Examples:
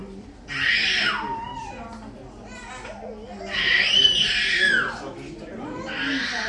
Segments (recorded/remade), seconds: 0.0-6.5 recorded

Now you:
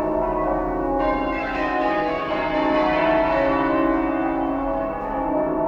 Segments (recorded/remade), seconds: 0.0-1.4 recorded; 1.4-2.3 remade; 2.3-5.7 recorded

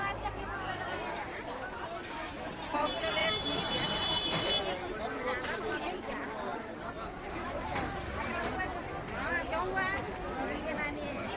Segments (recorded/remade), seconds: 0.0-1.8 remade; 1.8-3.2 recorded; 3.2-4.5 remade; 4.5-6.5 recorded; 6.5-10.1 remade; 10.1-11.4 recorded